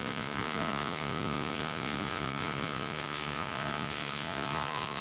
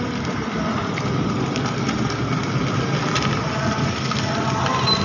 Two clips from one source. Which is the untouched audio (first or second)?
second